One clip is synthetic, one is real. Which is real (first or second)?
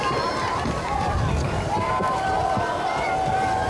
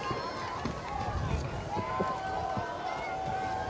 second